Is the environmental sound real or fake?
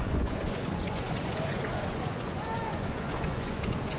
fake